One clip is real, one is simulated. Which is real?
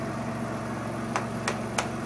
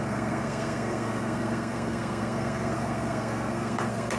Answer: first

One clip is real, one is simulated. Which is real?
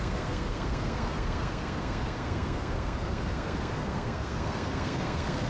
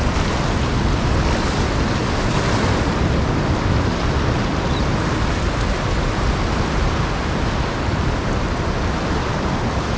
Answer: second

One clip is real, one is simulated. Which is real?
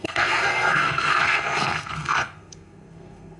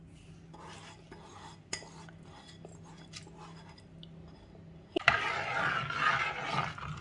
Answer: second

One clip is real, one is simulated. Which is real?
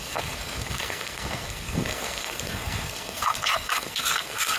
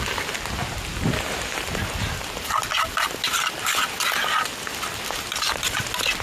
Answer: second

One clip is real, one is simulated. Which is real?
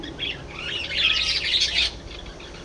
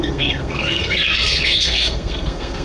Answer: first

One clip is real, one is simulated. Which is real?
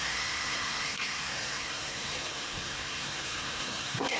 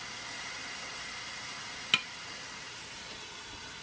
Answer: second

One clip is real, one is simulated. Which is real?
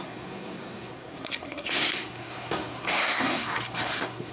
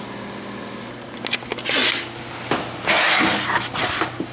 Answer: second